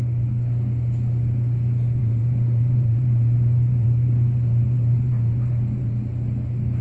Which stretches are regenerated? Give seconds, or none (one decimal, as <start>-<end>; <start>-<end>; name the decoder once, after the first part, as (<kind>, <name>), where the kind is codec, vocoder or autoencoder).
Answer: 2.0-6.0 (vocoder, BigVGAN v2)